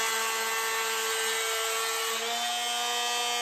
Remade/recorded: recorded